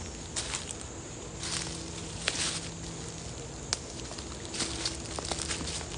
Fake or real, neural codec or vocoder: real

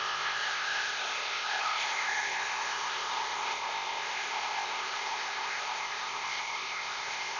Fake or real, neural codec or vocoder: fake, codec, ZipCodec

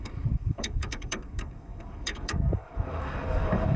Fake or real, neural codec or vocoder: fake, codec, DAC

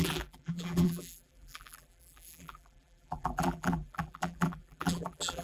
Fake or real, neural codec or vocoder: fake, vocoder, BigVGAN v2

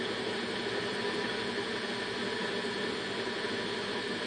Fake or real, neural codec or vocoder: real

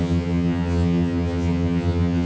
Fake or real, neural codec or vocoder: fake, vocoder, HiFi-GAN